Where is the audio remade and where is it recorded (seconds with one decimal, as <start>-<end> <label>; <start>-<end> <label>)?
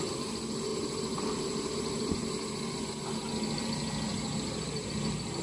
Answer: 0.0-0.7 recorded; 0.7-2.2 remade; 2.2-4.1 recorded; 4.1-4.9 remade; 4.9-5.4 recorded